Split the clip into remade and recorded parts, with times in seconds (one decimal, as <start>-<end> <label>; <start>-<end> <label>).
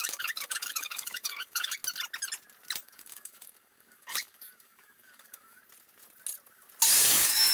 0.0-1.8 remade; 1.8-2.8 recorded; 2.8-5.6 remade; 5.6-7.0 recorded; 7.0-7.5 remade